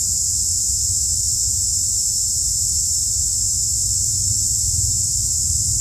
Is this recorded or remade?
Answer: remade